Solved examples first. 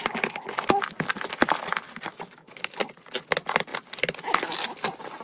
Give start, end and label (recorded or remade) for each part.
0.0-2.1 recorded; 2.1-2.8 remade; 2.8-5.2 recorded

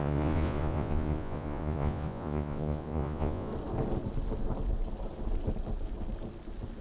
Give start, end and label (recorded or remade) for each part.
0.0-3.5 remade; 3.5-6.8 recorded

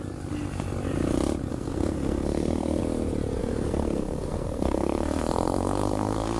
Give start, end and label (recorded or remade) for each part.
0.0-1.5 recorded; 1.5-2.8 remade; 2.8-3.4 recorded; 3.4-6.4 remade

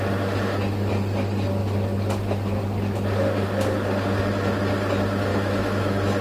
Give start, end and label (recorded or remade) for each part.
0.0-5.3 recorded; 5.3-6.2 remade